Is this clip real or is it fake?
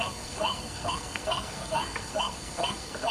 fake